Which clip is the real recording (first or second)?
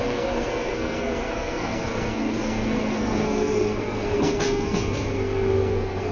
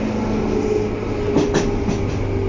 second